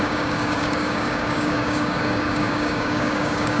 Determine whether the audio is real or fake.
fake